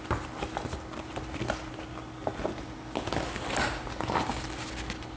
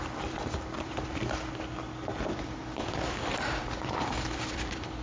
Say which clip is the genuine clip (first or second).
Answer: first